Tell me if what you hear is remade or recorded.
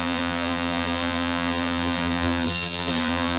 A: remade